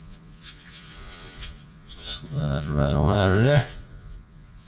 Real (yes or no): no